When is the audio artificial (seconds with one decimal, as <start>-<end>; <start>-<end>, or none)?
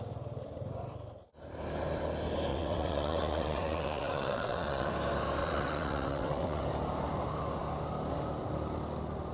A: 2.5-4.9; 5.4-6.6